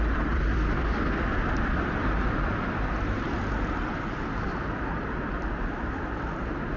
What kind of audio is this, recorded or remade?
remade